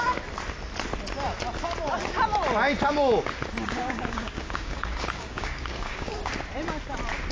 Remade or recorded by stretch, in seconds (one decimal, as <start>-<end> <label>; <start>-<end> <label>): 0.0-3.5 recorded; 3.5-6.3 remade; 6.3-7.3 recorded